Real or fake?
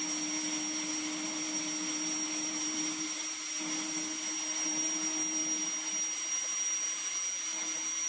real